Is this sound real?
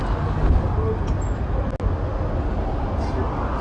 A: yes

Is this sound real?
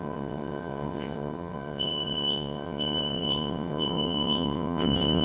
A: no